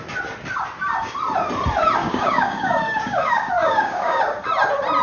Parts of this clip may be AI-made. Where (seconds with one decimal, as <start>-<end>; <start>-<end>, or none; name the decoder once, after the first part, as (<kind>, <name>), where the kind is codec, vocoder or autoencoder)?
2.0-4.2 (codec, DAC)